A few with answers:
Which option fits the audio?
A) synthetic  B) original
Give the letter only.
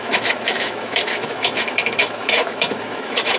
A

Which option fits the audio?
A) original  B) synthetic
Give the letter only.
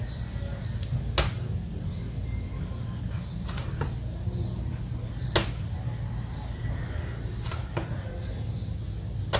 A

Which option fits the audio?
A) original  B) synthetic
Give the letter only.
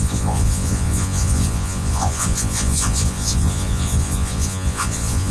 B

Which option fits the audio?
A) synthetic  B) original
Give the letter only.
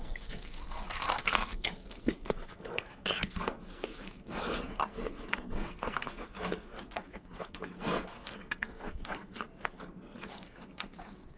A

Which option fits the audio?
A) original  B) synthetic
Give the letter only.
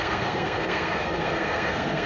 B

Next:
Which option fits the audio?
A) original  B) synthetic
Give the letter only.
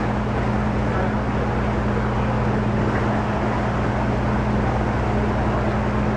A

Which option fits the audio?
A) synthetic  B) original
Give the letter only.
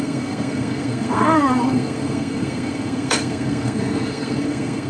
A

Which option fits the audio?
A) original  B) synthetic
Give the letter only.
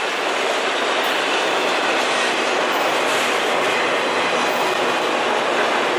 A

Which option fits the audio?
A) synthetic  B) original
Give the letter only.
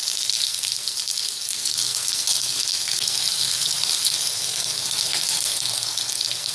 A